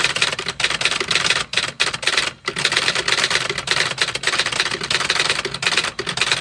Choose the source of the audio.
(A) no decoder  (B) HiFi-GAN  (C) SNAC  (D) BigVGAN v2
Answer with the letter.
A